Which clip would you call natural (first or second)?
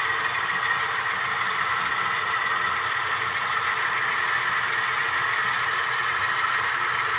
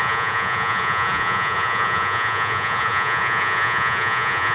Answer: first